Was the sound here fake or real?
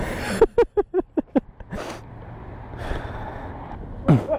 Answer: real